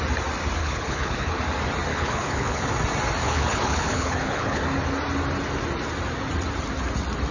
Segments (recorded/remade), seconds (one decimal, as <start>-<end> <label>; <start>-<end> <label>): 0.0-0.6 recorded; 0.6-1.4 remade; 1.4-1.9 recorded; 1.9-2.6 remade; 2.6-3.2 recorded; 3.2-4.6 remade; 4.6-7.3 recorded